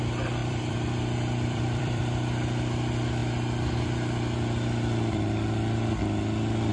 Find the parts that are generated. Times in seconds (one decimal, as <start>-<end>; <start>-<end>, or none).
0.4-2.0